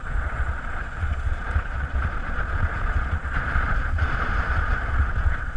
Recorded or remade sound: remade